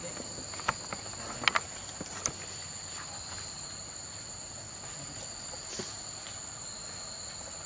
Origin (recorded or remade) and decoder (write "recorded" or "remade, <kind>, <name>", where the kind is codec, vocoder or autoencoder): recorded